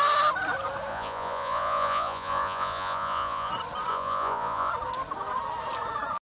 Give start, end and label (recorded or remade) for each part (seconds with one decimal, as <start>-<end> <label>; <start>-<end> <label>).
0.0-0.9 recorded; 0.9-3.5 remade; 3.5-3.9 recorded; 3.9-4.7 remade; 4.7-6.3 recorded